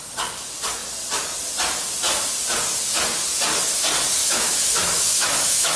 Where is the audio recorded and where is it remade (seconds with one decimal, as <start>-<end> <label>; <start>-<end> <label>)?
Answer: 0.0-4.2 recorded; 4.2-5.8 remade